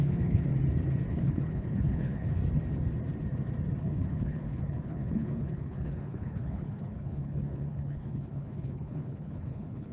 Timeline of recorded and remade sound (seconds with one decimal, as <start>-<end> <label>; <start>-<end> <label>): 0.0-0.5 remade; 0.5-1.1 recorded; 1.1-2.4 remade; 2.4-3.8 recorded; 3.8-9.9 remade

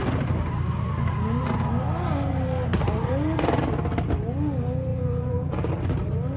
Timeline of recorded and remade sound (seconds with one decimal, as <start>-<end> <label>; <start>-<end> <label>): 0.0-4.9 recorded; 4.9-5.7 remade; 5.7-6.4 recorded